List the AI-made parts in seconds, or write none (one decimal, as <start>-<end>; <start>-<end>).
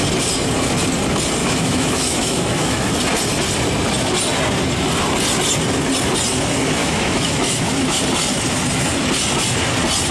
1.4-2.9; 6.8-8.0